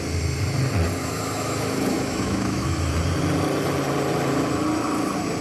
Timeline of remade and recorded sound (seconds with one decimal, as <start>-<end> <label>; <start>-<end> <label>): 0.0-1.0 recorded; 1.0-2.9 remade; 2.9-5.4 recorded

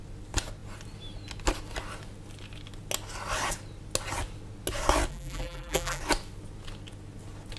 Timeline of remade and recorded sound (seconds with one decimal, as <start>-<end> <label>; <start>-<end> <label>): 0.0-5.1 recorded; 5.1-6.0 remade; 6.0-7.6 recorded

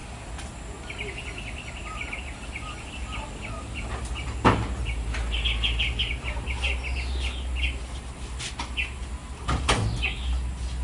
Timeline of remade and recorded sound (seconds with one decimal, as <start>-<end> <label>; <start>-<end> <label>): 0.0-10.8 recorded

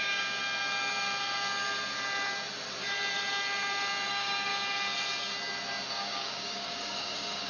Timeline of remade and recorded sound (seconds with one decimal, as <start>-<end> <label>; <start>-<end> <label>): 0.0-0.4 remade; 0.4-4.1 recorded; 4.1-4.5 remade; 4.5-5.9 recorded; 5.9-7.5 remade

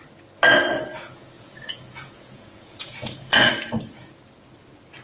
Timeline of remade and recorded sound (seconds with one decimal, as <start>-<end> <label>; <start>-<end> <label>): 0.0-0.9 recorded; 0.9-3.5 remade; 3.5-5.0 recorded

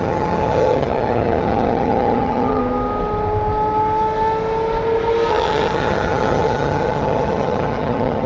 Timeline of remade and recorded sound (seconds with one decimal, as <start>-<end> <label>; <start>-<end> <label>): 0.0-2.6 remade; 2.6-5.3 recorded; 5.3-8.3 remade

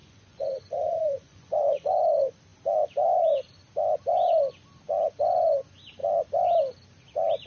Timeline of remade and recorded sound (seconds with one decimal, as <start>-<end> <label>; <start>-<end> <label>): 0.0-2.0 remade; 2.0-7.5 recorded